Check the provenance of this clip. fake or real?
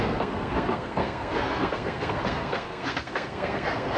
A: fake